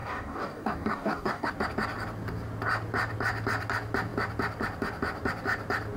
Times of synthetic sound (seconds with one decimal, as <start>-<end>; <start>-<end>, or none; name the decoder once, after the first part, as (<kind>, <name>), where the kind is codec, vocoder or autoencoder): 0.0-1.5 (codec, DAC)